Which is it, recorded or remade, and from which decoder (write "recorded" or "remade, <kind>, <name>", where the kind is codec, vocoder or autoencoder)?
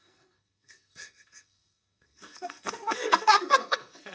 remade, codec, SNAC